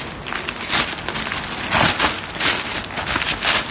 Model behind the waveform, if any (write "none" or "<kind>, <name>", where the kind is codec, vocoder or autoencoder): none